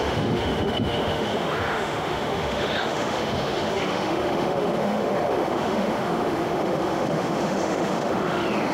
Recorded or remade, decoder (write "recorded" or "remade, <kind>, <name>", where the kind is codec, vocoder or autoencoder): remade, autoencoder, DAC-VAE